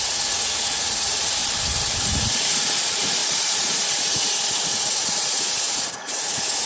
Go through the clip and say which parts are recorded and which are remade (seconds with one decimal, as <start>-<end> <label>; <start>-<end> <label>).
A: 0.0-1.4 remade; 1.4-2.0 recorded; 2.0-6.7 remade